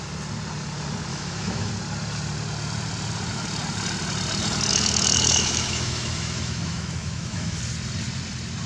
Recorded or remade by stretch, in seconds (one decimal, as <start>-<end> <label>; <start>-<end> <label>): 0.0-1.1 recorded; 1.1-1.7 remade; 1.7-4.7 recorded; 4.7-7.6 remade; 7.6-8.7 recorded